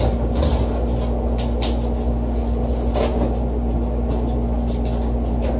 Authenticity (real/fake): real